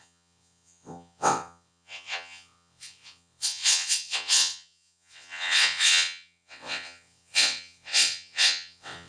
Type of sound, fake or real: fake